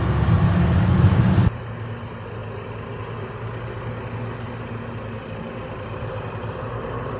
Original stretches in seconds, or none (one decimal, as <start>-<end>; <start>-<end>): 0.0-7.2